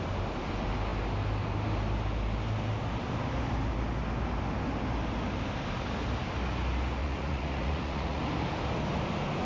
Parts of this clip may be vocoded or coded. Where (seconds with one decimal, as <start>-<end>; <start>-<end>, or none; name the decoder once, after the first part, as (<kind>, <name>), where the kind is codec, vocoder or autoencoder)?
7.0-8.2 (vocoder, Vocos)